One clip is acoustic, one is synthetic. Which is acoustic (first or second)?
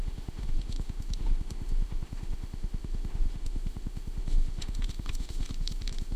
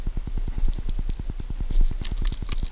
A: second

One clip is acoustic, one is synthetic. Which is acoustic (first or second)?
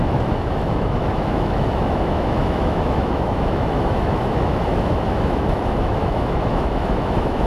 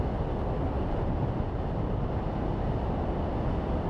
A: second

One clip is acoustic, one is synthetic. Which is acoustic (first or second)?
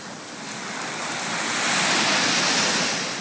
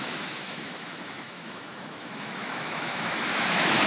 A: first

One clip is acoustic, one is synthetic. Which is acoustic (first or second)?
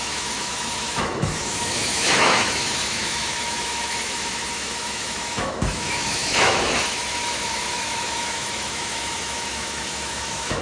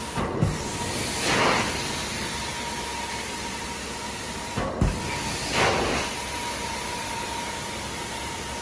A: second